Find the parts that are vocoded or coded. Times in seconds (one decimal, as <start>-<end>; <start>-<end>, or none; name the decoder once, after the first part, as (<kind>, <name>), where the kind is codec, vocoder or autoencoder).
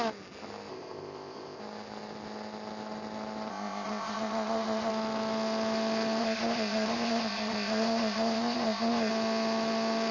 0.7-1.6 (codec, ZipCodec); 3.5-4.9; 6.2-9.1